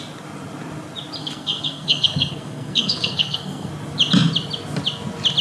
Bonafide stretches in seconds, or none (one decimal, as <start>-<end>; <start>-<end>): 0.0-1.2; 3.7-5.4